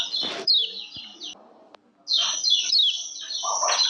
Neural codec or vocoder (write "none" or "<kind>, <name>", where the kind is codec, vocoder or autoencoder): none